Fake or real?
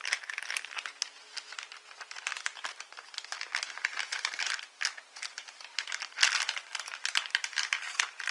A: real